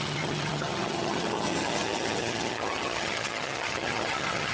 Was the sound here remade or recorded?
remade